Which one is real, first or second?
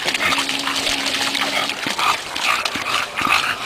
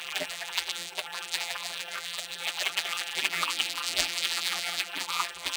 first